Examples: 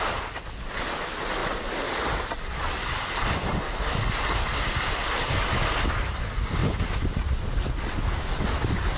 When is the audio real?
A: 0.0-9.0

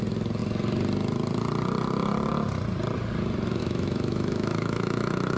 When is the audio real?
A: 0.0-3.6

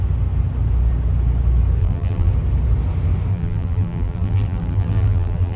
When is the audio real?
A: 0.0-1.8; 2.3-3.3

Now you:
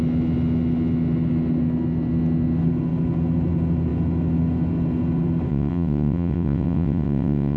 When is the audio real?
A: 0.0-5.5

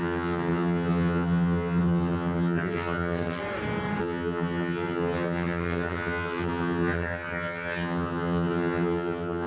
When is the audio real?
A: 3.4-4.0

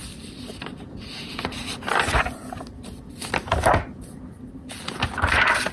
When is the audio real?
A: 0.0-5.7

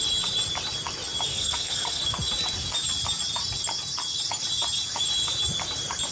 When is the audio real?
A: 0.0-1.3; 2.0-6.1